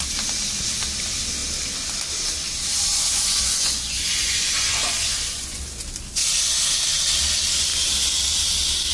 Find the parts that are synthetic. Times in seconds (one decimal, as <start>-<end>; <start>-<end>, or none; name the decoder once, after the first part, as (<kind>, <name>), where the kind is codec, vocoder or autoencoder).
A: 2.9-5.6 (vocoder, Vocos)